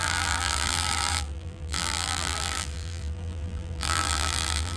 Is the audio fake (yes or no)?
yes